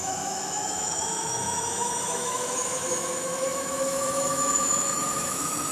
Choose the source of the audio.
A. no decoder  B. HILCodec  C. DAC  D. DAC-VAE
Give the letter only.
D